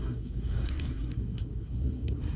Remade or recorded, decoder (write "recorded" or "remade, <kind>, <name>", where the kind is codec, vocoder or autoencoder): remade, codec, SNAC